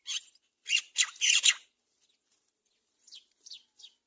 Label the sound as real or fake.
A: fake